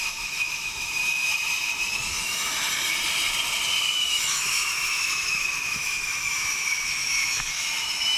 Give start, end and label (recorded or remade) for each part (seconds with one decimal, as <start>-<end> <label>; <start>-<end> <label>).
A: 0.0-1.3 remade; 1.3-1.9 recorded; 1.9-2.5 remade; 2.5-3.9 recorded; 3.9-8.2 remade